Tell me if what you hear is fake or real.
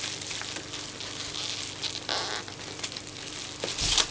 real